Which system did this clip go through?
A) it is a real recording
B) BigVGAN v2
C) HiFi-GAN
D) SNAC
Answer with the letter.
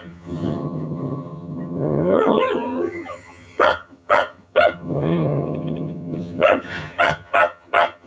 C